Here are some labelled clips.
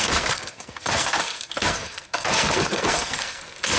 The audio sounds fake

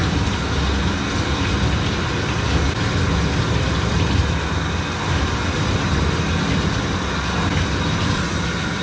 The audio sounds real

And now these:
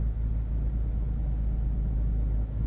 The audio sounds real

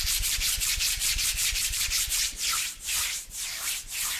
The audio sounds fake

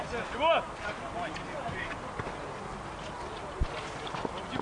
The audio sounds real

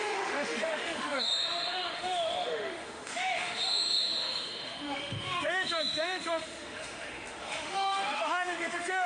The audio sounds fake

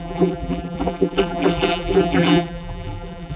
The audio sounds fake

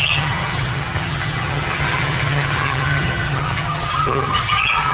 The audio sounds fake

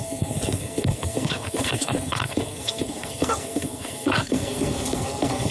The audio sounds fake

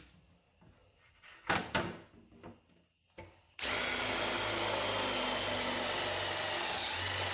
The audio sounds real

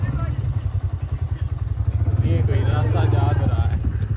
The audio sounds real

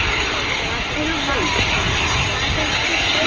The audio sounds real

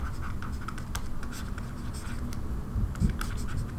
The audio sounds real